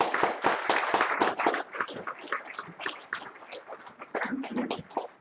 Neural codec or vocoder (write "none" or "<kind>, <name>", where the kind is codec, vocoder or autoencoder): none